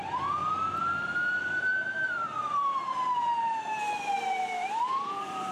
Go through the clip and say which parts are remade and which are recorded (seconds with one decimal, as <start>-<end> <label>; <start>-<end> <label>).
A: 0.0-0.4 remade; 0.4-1.4 recorded; 1.4-5.5 remade